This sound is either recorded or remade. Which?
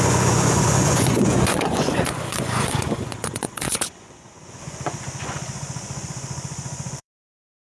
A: remade